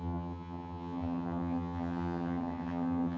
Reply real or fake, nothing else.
fake